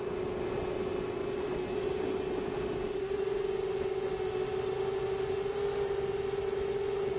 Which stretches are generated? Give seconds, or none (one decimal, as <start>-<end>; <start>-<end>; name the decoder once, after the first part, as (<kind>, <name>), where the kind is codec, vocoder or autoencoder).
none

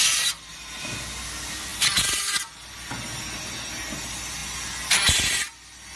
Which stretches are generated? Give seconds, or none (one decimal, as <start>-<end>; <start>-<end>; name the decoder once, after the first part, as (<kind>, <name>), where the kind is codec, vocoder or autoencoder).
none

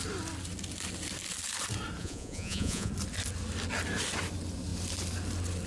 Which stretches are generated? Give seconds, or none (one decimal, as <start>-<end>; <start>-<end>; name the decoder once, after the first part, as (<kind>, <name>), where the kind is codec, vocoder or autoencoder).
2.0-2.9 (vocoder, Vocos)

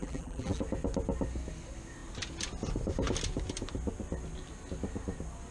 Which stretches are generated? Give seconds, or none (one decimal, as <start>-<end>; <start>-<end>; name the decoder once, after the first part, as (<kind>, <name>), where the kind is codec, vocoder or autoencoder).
0.0-0.6 (vocoder, BigVGAN v2)

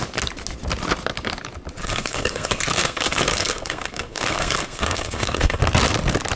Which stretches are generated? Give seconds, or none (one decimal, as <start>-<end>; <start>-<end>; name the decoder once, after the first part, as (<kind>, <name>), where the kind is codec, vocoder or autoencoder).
1.8-5.6 (codec, SNAC)

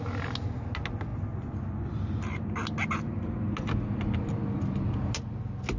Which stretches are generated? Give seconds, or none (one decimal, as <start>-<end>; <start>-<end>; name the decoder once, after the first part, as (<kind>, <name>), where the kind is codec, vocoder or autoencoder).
none